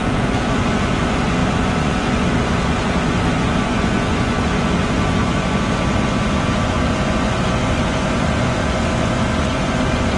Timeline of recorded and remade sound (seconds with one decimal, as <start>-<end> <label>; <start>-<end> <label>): 0.0-10.2 remade